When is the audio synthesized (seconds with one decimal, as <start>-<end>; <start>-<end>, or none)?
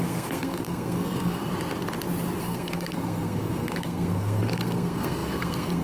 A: 0.0-1.5; 2.4-5.8